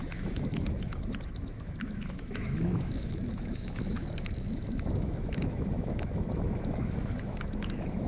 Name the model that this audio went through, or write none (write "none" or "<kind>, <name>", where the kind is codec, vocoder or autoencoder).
autoencoder, DAC-VAE